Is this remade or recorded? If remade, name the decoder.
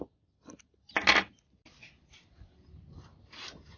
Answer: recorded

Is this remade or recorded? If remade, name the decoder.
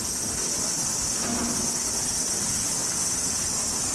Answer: recorded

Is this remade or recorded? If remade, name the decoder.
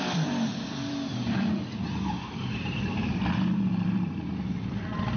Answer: remade, vocoder, BigVGAN v2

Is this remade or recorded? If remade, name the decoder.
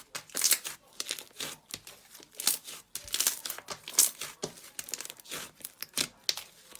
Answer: recorded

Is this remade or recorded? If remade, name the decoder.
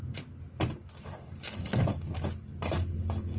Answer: recorded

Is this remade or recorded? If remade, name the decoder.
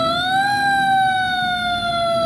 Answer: recorded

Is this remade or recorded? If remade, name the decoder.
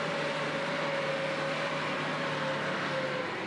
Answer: recorded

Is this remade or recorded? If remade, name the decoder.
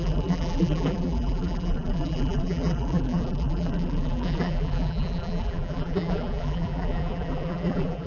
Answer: remade, vocoder, BigVGAN v2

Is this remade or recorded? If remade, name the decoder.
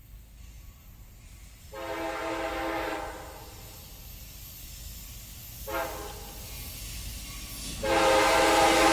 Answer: recorded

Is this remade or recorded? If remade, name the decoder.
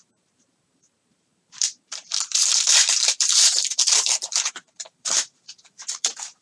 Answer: remade, vocoder, BigVGAN v2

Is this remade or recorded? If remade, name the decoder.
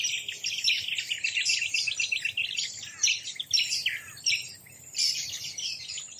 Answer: remade, vocoder, BigVGAN v2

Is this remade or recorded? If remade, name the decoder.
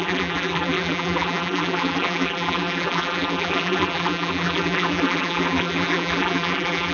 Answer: remade, vocoder, BigVGAN v2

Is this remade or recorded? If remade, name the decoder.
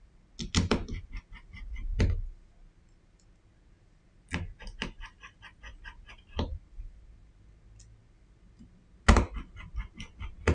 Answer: recorded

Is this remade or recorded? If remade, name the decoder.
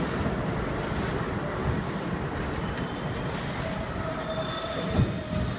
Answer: recorded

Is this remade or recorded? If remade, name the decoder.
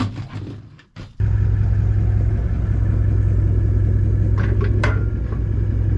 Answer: recorded